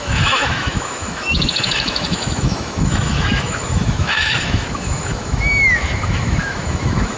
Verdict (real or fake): fake